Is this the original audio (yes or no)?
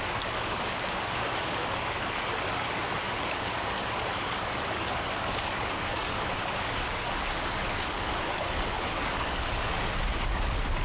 no